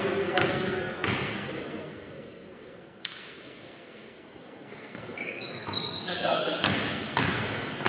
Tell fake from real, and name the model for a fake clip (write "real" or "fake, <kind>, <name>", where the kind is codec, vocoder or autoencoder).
fake, codec, SNAC